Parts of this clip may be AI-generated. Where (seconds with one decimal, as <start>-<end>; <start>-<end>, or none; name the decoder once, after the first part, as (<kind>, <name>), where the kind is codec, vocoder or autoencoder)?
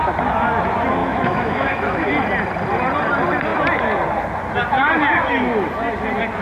1.0-2.1 (autoencoder, DAC-VAE)